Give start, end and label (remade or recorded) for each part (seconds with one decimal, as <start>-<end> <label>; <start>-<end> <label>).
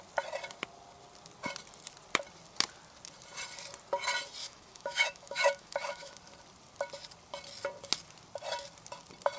0.0-4.4 recorded; 4.4-6.1 remade; 6.1-9.4 recorded